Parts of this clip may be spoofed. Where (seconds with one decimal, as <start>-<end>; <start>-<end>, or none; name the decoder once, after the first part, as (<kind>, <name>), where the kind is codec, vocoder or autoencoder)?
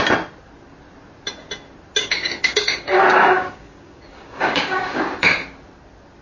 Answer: 2.0-5.0 (codec, DAC)